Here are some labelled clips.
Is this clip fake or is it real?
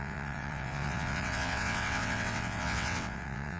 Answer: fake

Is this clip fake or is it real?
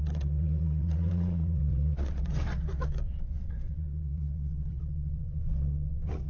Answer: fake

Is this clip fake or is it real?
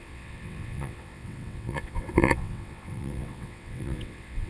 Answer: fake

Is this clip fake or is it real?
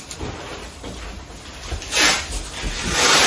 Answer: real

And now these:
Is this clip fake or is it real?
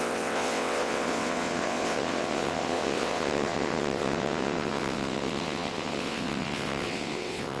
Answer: fake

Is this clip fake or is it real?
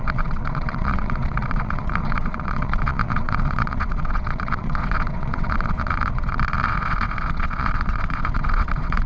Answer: fake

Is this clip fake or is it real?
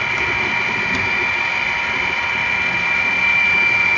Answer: real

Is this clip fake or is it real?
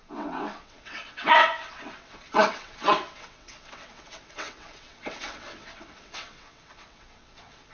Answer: fake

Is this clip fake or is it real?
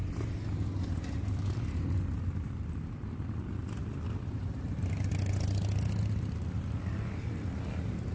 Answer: real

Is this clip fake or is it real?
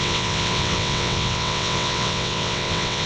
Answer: fake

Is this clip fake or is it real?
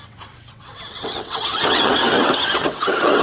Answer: fake